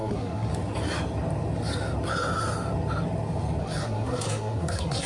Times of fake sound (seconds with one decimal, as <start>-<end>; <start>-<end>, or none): 0.0-0.5; 3.6-5.1